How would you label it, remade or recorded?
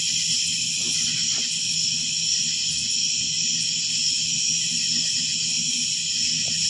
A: recorded